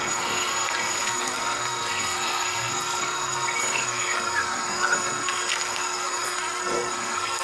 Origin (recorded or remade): remade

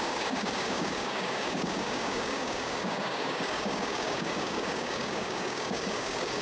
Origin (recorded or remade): remade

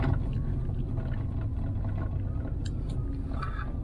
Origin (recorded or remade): recorded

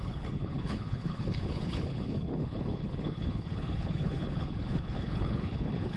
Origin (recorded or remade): remade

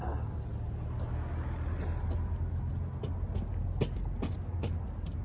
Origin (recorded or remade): recorded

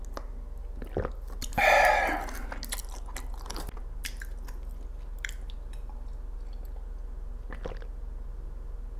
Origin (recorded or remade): recorded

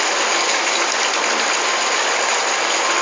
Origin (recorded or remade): recorded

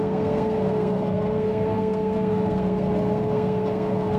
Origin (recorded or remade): remade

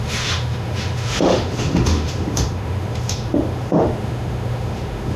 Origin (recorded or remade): remade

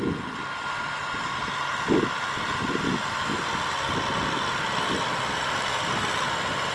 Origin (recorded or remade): recorded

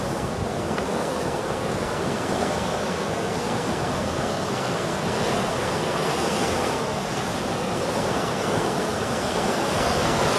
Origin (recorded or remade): remade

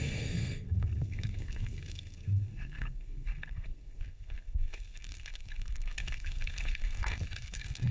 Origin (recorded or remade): remade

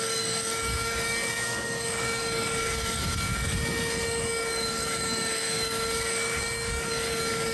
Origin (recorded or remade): remade